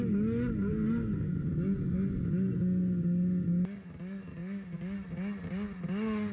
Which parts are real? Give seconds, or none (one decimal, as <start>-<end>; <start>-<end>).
0.0-6.3